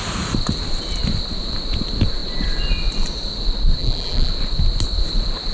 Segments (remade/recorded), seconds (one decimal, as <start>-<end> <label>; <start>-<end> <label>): 0.0-3.8 recorded; 3.8-4.3 remade; 4.3-5.5 recorded